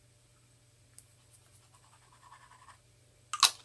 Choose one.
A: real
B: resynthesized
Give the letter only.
A